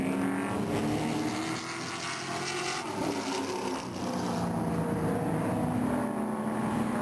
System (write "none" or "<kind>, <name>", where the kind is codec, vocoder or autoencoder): none